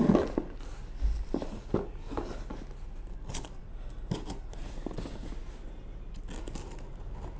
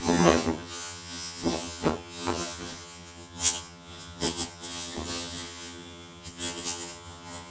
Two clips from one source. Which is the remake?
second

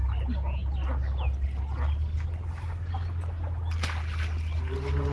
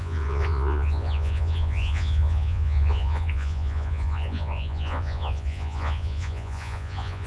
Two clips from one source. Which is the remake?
second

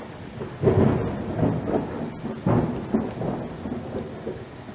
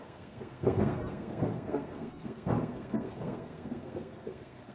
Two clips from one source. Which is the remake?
second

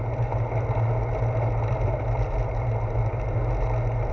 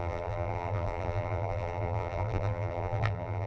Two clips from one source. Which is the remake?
second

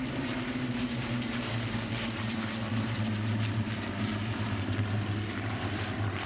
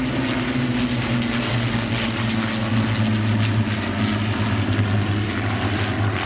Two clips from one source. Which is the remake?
first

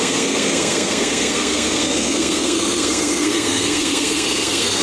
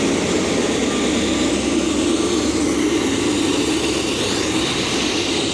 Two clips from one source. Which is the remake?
first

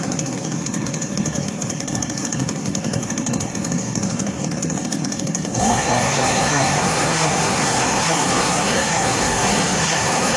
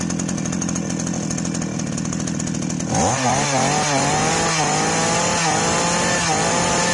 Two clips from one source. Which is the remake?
first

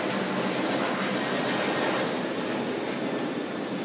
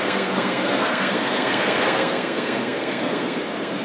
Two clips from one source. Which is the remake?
second